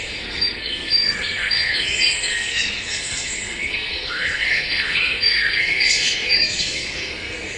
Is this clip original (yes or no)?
no